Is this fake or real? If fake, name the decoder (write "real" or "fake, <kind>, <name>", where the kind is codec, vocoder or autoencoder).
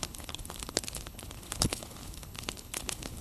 fake, codec, HILCodec